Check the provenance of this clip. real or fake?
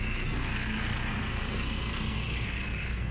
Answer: fake